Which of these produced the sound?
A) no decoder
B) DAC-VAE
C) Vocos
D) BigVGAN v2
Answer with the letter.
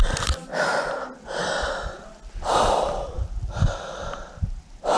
A